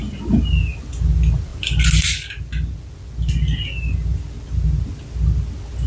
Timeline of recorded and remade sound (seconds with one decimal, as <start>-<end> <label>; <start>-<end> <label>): 0.0-5.9 recorded

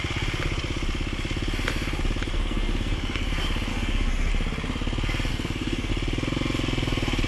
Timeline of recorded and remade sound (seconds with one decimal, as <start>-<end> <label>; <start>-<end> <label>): 0.0-2.3 recorded; 2.3-3.3 remade; 3.3-3.7 recorded; 3.7-4.3 remade; 4.3-5.3 recorded; 5.3-5.9 remade; 5.9-7.3 recorded

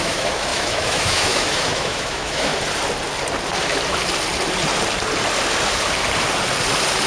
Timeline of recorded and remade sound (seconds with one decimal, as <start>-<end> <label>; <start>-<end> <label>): 0.0-2.5 remade; 2.5-7.1 recorded

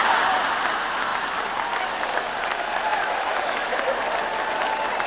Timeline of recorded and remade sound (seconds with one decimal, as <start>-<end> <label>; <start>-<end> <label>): 0.0-2.9 recorded; 2.9-3.8 remade; 3.8-5.1 recorded

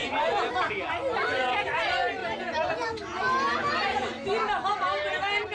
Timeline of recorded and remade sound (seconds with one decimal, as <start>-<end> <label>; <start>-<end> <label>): 0.0-5.5 recorded

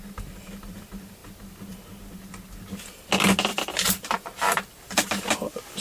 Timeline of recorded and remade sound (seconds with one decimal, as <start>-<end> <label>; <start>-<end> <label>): 0.0-3.5 recorded; 3.5-5.2 remade; 5.2-5.8 recorded